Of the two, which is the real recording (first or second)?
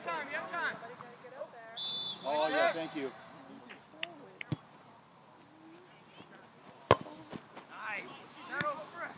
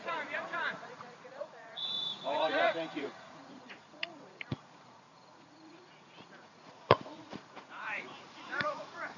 first